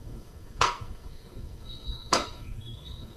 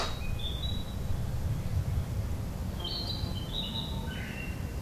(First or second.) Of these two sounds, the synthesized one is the first